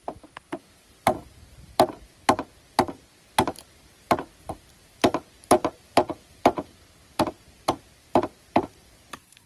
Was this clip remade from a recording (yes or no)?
yes